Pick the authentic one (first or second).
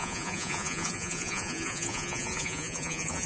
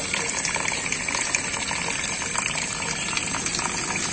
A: second